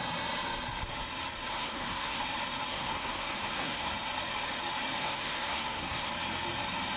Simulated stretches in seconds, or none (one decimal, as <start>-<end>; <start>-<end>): 1.5-2.2; 2.7-3.9; 5.0-6.1